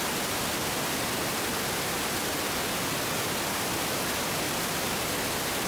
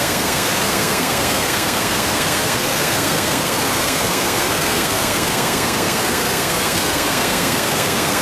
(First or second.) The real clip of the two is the first